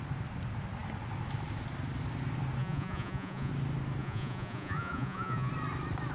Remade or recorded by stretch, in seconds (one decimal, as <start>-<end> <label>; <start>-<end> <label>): 0.0-2.6 recorded; 2.6-3.5 remade; 3.5-4.0 recorded; 4.0-5.5 remade; 5.5-6.1 recorded